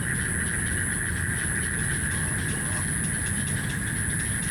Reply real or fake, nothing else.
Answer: real